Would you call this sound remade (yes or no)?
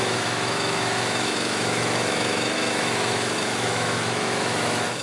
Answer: yes